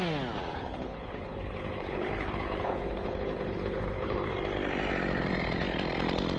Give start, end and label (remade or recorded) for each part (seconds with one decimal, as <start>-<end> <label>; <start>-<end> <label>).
0.0-0.5 recorded; 0.5-4.3 remade; 4.3-6.4 recorded